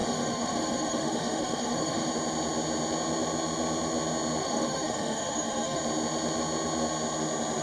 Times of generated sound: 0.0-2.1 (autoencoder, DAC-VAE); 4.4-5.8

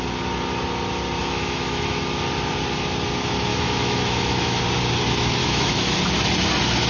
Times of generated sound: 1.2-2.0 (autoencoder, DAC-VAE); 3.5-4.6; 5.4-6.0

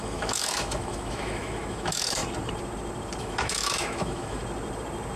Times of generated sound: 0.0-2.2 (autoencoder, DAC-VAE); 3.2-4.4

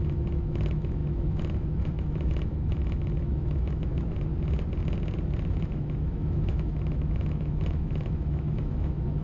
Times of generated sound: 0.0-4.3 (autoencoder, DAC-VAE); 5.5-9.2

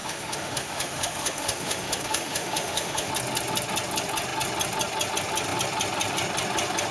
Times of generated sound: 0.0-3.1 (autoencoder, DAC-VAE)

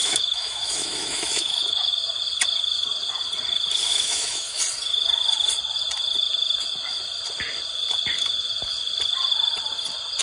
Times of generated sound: 0.0-1.9 (autoencoder, DAC-VAE); 3.9-4.6